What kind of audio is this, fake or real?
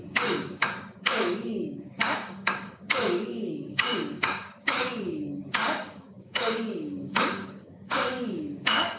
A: fake